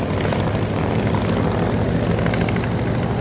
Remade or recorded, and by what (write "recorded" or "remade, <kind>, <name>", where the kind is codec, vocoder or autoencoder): recorded